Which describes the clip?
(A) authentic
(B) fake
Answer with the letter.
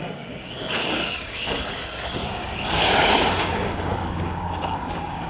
B